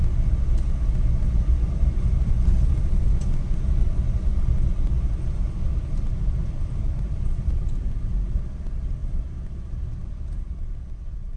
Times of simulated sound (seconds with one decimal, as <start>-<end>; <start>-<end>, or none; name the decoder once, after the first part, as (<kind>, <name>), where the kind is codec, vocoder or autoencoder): 6.4-7.6 (vocoder, BigVGAN v2); 9.0-9.6; 10.0-11.4